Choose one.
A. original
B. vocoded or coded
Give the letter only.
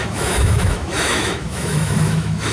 B